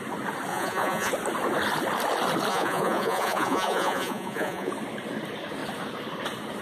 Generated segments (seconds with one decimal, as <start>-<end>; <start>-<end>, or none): 0.5-1.1; 2.5-4.7